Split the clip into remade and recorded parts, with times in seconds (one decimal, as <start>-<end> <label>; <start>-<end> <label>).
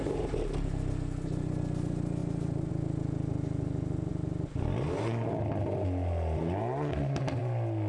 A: 0.0-2.2 recorded; 2.2-2.7 remade; 2.7-7.9 recorded